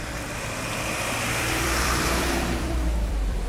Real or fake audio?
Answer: fake